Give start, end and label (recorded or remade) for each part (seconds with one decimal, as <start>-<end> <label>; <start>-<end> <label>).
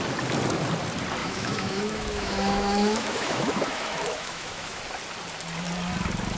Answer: 0.0-1.2 recorded; 1.2-4.8 remade; 4.8-6.4 recorded